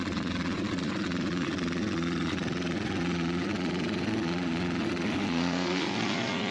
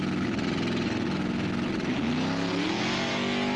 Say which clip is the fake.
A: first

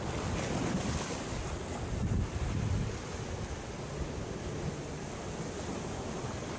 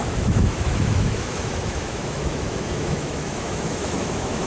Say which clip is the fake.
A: second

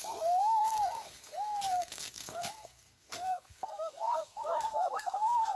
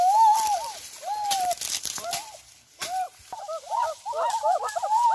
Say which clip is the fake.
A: first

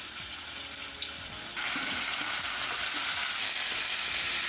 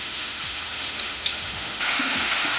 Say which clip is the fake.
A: second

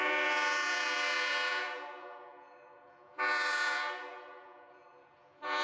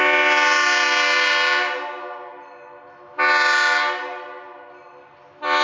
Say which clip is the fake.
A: first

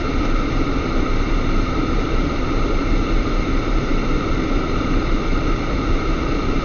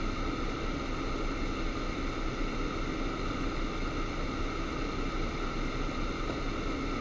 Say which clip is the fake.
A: first